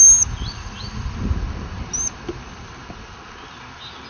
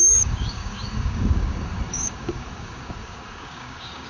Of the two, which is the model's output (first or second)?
second